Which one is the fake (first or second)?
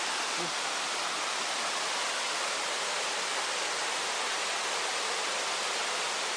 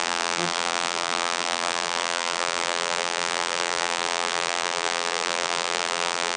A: second